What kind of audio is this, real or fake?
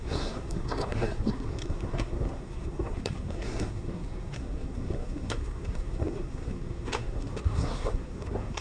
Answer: fake